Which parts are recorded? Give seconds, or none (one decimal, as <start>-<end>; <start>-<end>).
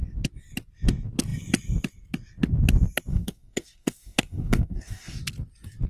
0.0-3.1; 5.2-5.9